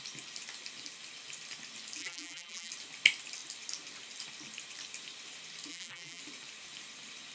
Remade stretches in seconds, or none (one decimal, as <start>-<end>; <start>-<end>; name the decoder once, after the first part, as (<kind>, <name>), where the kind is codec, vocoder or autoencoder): 2.0-2.7 (vocoder, BigVGAN v2); 5.7-6.2